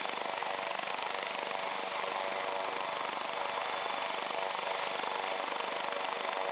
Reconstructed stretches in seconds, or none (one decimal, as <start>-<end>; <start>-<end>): none